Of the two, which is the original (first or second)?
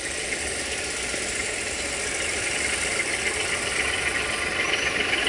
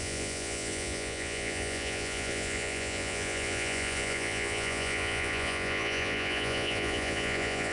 first